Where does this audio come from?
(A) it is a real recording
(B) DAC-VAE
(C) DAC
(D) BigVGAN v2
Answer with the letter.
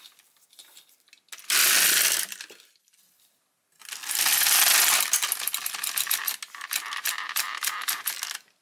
A